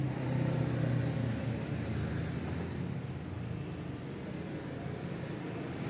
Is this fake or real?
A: real